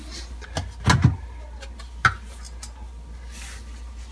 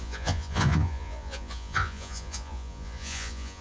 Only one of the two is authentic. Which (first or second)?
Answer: first